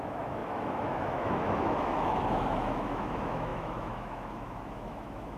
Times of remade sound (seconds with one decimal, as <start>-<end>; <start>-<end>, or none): 0.0-5.4